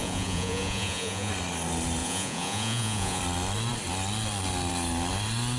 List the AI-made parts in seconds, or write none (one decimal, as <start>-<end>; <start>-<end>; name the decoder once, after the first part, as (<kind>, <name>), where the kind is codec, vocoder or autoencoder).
0.0-1.3 (vocoder, Vocos); 2.0-3.2